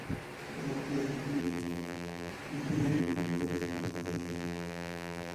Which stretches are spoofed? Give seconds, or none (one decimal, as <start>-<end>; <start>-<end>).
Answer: 1.4-2.3; 3.0-5.3